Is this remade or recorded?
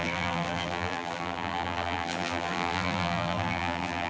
remade